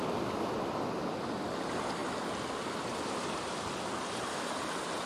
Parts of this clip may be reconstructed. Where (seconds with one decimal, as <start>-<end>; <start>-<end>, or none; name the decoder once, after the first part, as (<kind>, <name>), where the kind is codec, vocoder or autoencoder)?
none